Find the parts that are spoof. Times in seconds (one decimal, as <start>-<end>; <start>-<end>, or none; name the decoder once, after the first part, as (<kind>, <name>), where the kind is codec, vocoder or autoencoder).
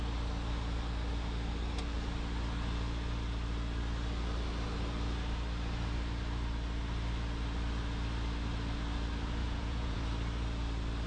9.4-10.0 (vocoder, Vocos)